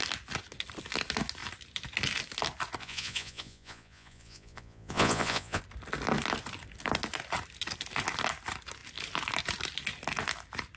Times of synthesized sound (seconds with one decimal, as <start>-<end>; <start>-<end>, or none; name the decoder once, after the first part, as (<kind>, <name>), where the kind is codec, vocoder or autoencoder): 2.8-5.6 (vocoder, Vocos)